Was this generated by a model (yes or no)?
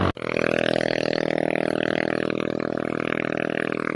no